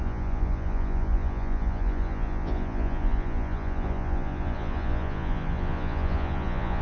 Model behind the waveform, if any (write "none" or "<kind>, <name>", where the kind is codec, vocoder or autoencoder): vocoder, Vocos